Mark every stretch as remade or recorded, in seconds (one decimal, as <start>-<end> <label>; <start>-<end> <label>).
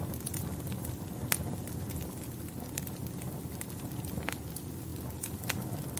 0.0-6.0 recorded